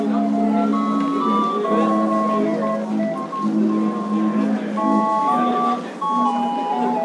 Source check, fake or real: real